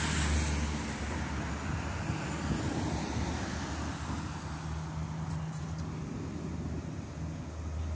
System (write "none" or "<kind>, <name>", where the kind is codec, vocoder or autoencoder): none